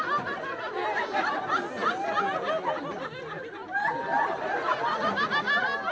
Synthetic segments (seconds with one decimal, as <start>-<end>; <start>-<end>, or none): none